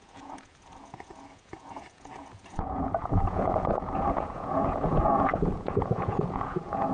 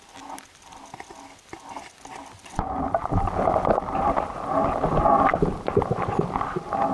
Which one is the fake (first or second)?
first